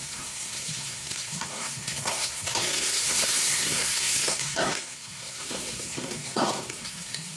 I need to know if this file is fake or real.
fake